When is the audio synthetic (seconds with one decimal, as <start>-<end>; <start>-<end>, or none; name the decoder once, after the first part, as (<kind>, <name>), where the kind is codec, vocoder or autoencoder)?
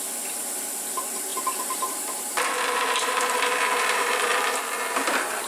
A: 1.3-4.6 (vocoder, BigVGAN v2)